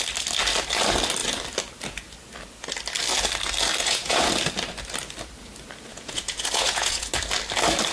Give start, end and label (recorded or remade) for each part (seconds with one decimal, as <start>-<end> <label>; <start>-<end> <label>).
0.0-3.8 recorded; 3.8-4.3 remade; 4.3-5.9 recorded; 5.9-7.1 remade; 7.1-7.9 recorded